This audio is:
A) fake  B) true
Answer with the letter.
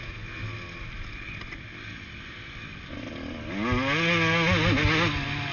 B